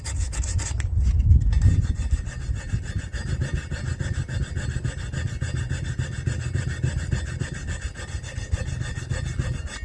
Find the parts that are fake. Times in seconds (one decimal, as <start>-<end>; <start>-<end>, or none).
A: none